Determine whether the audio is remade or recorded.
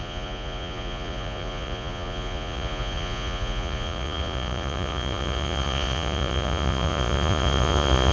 remade